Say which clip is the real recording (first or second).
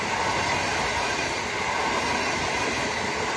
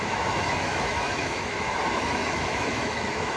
first